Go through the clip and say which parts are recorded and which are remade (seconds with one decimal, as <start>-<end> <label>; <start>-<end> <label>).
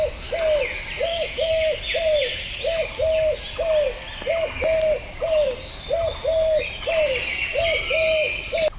0.0-1.1 recorded; 1.1-1.8 remade; 1.8-8.8 recorded